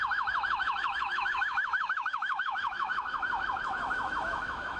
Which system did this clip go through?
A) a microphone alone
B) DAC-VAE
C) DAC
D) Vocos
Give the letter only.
B